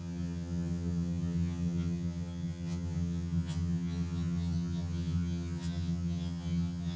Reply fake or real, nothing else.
fake